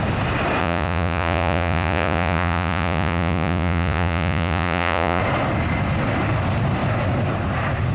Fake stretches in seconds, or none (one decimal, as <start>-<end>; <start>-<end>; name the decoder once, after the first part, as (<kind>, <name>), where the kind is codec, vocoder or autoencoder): 0.6-5.2 (vocoder, Vocos)